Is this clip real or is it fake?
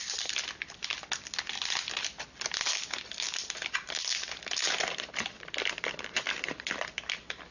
fake